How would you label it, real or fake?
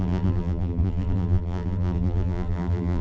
fake